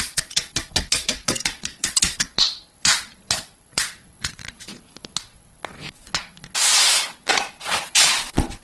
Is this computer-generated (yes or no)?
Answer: yes